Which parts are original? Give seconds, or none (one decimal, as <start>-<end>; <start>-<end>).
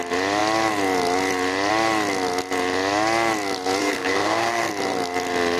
0.0-3.8; 4.7-5.6